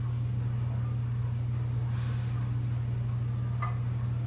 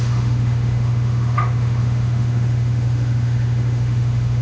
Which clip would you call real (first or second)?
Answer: first